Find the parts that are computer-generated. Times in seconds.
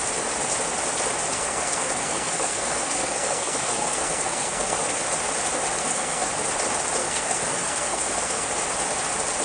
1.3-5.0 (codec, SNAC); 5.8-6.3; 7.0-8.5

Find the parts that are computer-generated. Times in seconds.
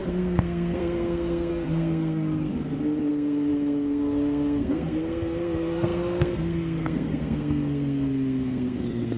0.0-2.5 (codec, SNAC); 3.1-9.2